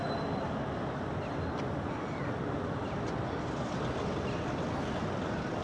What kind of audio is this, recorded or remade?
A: recorded